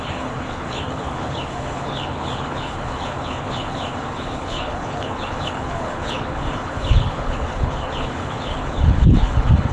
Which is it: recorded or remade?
remade